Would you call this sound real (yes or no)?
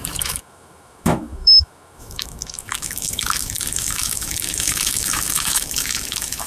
no